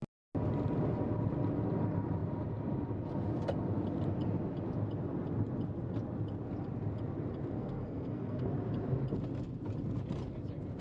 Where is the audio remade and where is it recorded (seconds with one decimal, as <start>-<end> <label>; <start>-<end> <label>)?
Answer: 0.0-7.6 recorded; 7.6-8.5 remade; 8.5-10.8 recorded